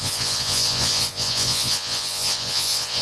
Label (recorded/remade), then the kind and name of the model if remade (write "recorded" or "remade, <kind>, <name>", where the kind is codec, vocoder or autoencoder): remade, vocoder, Vocos